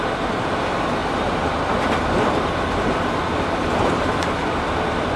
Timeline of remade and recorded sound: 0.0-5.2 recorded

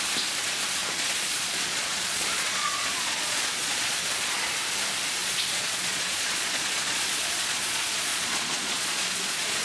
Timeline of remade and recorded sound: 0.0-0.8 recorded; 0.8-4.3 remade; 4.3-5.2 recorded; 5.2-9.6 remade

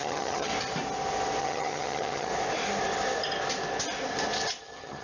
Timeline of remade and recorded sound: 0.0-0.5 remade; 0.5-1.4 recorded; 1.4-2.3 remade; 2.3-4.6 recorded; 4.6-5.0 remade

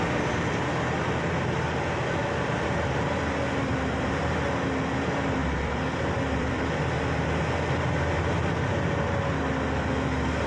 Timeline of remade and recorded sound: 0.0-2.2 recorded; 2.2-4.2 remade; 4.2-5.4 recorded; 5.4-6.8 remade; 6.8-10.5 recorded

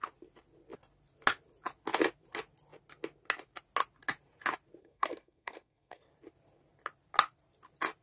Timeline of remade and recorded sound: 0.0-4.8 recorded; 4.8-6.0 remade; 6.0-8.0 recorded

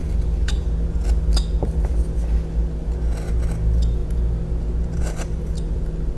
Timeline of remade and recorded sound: 0.0-6.2 recorded

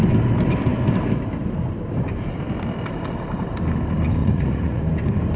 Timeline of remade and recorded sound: 0.0-4.2 recorded; 4.2-4.8 remade; 4.8-5.4 recorded

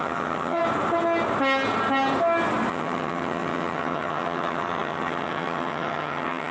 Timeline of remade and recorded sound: 0.0-0.6 remade; 0.6-2.7 recorded; 2.7-6.5 remade